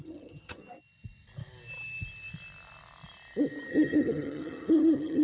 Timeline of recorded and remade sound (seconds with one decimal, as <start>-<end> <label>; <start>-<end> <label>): 0.0-0.6 remade; 0.6-3.7 recorded; 3.7-5.2 remade